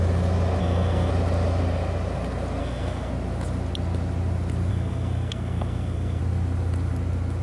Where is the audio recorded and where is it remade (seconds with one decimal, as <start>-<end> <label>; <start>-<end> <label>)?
0.0-0.6 recorded; 0.6-1.1 remade; 1.1-2.6 recorded; 2.6-3.1 remade; 3.1-4.7 recorded; 4.7-6.2 remade; 6.2-7.4 recorded